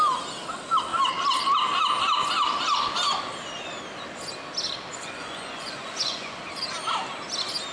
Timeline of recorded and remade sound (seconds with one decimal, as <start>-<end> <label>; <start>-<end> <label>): 0.0-4.9 recorded; 4.9-6.4 remade; 6.4-7.7 recorded